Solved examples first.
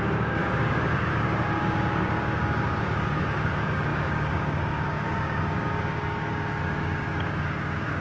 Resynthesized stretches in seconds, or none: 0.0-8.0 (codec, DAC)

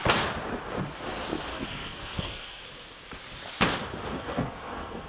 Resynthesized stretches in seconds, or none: 1.5-2.6 (codec, SNAC); 4.1-5.1

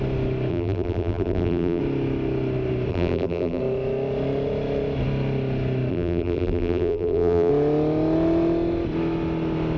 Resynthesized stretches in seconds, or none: 0.5-1.8 (vocoder, BigVGAN v2); 2.9-3.6; 5.9-7.5

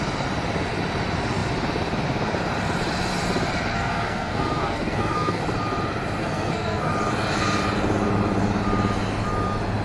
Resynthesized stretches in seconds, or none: 3.7-5.4 (codec, SNAC); 6.2-6.9

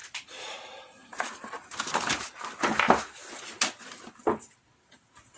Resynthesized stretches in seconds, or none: 0.0-0.5 (vocoder, BigVGAN v2); 0.9-4.1